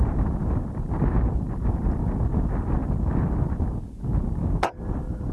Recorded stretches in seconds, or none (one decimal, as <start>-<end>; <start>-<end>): 0.0-5.3